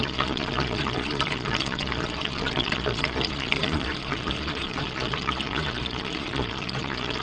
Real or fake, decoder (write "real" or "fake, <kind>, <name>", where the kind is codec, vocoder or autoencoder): fake, vocoder, Vocos